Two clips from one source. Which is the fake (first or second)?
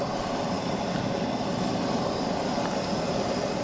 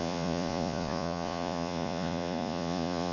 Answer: second